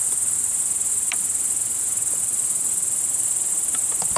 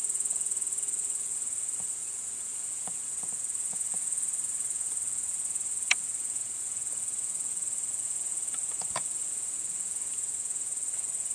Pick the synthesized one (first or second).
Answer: second